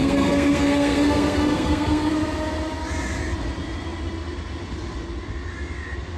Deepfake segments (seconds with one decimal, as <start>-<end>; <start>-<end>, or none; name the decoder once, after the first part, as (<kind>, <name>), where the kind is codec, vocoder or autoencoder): 0.0-2.1 (codec, SNAC)

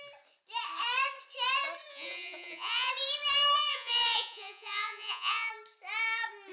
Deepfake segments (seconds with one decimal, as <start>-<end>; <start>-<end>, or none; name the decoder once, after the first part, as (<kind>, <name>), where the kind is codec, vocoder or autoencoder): 1.9-2.9 (vocoder, Vocos); 3.7-5.5

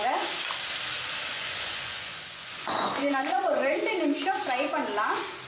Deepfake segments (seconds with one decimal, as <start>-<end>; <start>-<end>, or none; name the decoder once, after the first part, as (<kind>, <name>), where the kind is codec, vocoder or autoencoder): 1.3-3.7 (vocoder, Vocos)

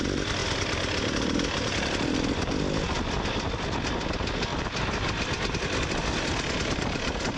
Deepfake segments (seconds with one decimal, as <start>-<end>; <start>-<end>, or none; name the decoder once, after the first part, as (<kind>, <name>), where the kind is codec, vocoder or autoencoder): none

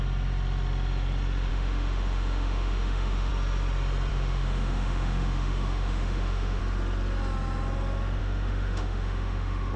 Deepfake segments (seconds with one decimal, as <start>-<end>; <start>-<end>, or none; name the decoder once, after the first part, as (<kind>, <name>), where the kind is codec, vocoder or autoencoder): 1.5-3.3 (autoencoder, DAC-VAE); 4.1-6.6; 8.2-9.8